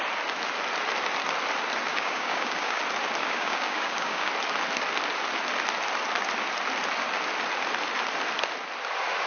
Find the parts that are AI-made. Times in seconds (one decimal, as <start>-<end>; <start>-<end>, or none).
1.9-2.8; 3.2-4.3